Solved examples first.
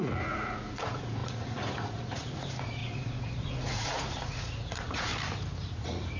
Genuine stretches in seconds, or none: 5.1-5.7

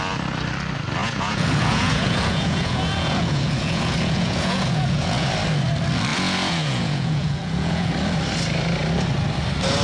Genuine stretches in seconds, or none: 0.0-1.0; 5.3-6.1; 7.9-9.8

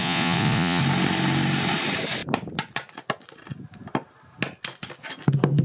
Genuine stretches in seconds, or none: 0.8-5.6

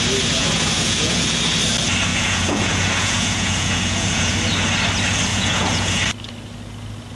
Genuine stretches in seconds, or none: 0.0-0.4; 1.3-2.1; 4.3-5.3; 6.1-7.1